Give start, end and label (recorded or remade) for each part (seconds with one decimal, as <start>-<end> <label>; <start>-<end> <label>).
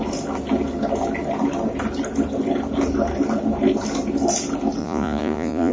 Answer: 0.0-4.8 recorded; 4.8-5.7 remade